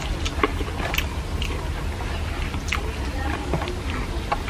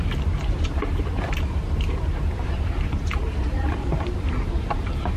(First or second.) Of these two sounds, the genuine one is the first